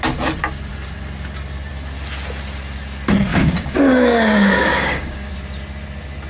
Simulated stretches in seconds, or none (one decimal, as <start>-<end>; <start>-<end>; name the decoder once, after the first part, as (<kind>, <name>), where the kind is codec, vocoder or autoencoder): 3.3-5.3 (codec, DAC)